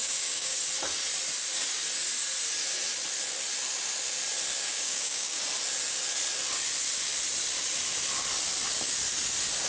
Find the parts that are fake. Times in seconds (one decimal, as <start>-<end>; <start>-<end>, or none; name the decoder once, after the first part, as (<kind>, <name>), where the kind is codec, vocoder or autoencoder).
0.0-0.6 (codec, DAC); 4.7-5.4